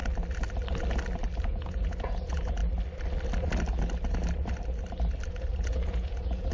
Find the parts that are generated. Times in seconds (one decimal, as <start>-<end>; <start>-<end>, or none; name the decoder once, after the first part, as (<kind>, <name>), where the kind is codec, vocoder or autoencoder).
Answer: 1.4-2.6 (vocoder, Vocos); 5.3-6.5

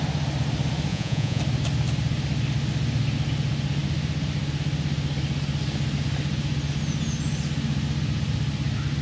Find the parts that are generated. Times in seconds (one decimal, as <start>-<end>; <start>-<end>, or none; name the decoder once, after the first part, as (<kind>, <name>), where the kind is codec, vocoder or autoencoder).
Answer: 0.9-1.4 (vocoder, Vocos)

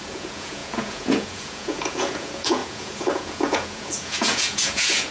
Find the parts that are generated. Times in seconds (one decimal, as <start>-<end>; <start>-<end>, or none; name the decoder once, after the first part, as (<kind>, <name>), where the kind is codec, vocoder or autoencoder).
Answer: 0.0-5.1 (vocoder, Vocos)

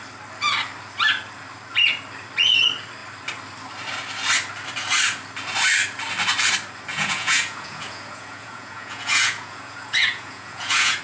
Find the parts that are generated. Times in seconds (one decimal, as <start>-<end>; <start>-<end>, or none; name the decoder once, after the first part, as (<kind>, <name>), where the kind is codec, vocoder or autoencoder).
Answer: 6.9-11.0 (vocoder, Vocos)

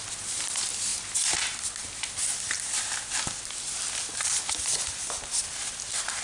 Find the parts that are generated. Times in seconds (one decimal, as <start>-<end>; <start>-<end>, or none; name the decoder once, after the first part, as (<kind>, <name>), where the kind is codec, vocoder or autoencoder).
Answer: none